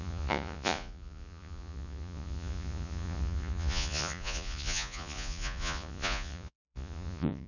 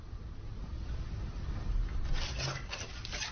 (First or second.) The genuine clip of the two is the second